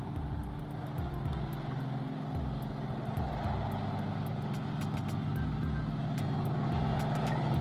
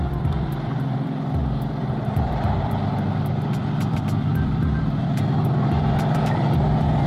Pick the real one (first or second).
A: first